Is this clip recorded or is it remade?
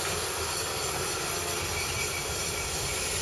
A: recorded